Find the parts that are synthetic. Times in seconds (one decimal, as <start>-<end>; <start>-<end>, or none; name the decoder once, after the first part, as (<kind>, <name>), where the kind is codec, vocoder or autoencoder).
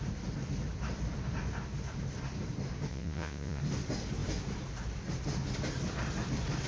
2.9-3.6 (vocoder, Vocos)